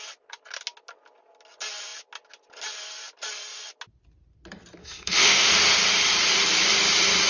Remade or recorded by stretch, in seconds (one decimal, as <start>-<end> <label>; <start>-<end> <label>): 0.0-4.8 recorded; 4.8-5.5 remade; 5.5-7.3 recorded